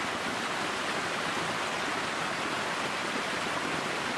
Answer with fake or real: real